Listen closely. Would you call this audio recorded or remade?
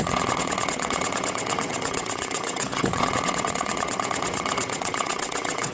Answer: remade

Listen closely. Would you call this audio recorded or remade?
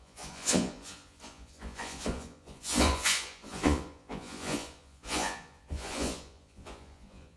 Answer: remade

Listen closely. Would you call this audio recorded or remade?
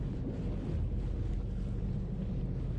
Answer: recorded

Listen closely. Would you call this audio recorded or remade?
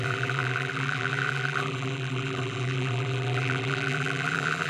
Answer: remade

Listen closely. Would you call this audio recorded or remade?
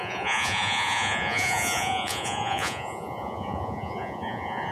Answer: remade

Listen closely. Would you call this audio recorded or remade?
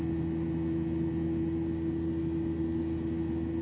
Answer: recorded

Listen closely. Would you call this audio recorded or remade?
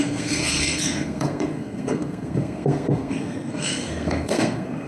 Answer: remade